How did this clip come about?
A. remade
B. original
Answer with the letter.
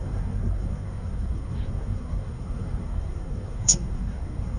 A